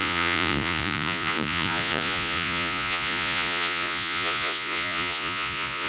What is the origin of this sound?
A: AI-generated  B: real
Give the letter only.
A